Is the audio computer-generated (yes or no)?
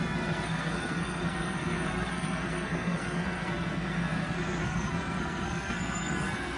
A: yes